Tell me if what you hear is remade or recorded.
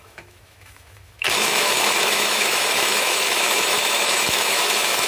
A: remade